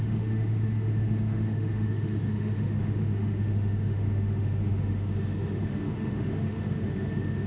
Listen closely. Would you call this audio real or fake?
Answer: fake